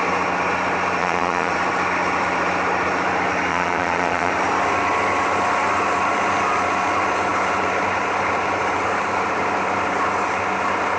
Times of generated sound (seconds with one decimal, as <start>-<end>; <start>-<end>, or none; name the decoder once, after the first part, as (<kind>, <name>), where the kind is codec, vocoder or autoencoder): 1.0-1.5 (vocoder, Vocos); 3.5-4.3